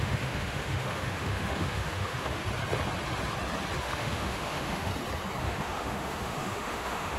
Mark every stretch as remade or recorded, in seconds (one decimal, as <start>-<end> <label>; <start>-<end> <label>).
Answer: 0.0-2.4 remade; 2.4-3.8 recorded; 3.8-4.9 remade; 4.9-5.4 recorded; 5.4-7.2 remade